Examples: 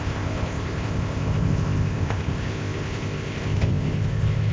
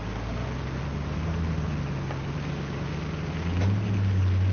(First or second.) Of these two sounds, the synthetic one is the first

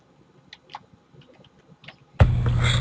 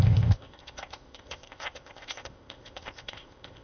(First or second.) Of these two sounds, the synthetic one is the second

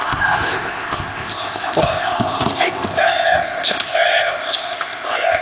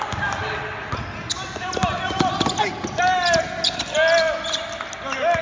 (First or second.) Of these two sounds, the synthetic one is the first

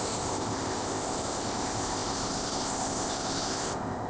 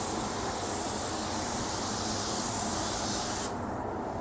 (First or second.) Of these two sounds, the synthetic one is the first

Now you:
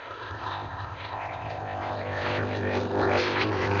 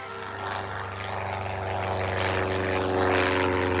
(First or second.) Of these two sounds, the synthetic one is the first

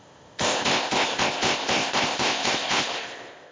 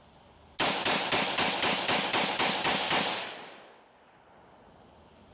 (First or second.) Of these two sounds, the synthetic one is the first